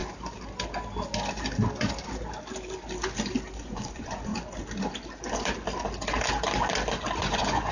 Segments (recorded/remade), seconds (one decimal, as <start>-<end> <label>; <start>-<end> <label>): 0.0-3.6 recorded; 3.6-4.3 remade; 4.3-7.2 recorded; 7.2-7.7 remade